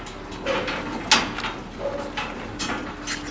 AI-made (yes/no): no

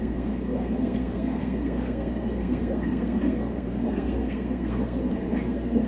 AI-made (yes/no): yes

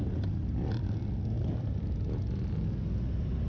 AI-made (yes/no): no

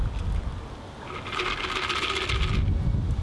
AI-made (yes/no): no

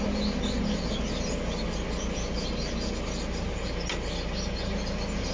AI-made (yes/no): no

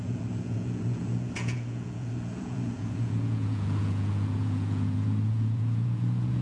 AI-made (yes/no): yes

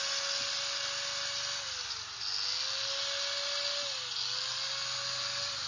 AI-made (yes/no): no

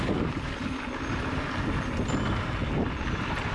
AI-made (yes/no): no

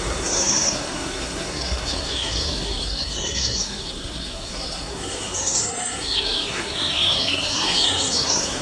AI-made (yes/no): yes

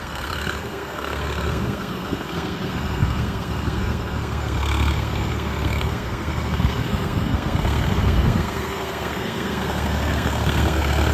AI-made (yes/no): yes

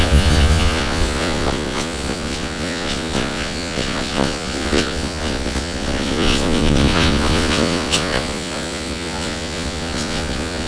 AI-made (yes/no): yes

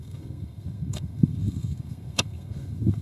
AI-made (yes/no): yes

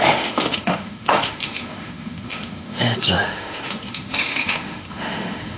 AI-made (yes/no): yes